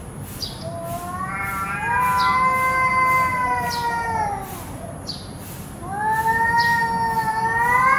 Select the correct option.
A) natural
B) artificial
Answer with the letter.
A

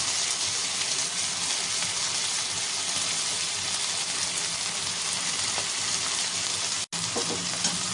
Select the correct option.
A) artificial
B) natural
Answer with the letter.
B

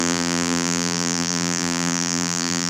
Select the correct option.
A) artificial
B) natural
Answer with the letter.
A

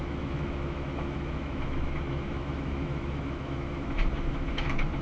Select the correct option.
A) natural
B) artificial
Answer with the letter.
B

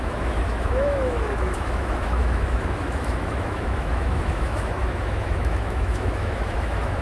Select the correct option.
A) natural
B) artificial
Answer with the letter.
B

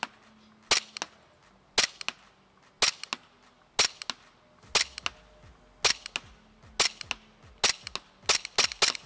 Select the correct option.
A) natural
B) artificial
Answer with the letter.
A